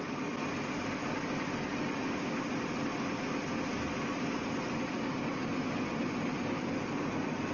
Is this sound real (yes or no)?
yes